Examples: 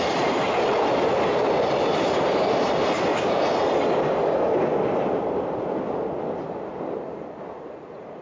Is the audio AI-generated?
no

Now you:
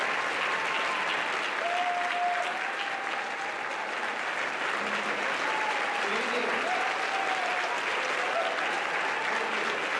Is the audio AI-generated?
no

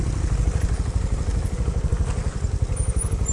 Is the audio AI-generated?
no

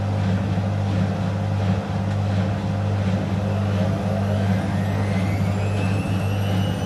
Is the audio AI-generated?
no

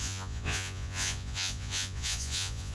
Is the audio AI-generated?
yes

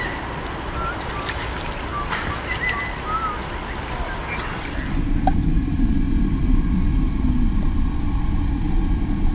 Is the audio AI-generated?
no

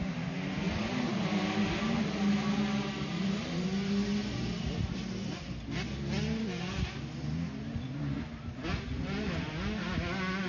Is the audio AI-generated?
no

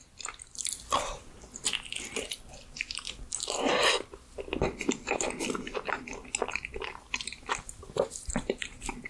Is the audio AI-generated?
no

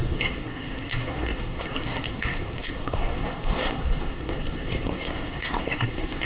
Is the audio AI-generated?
yes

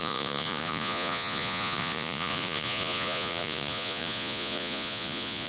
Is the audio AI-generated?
yes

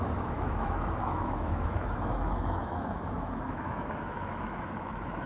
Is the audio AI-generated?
yes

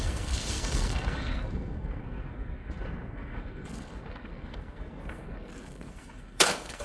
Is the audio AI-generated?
yes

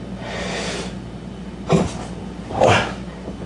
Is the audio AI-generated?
no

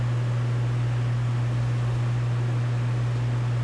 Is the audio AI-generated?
no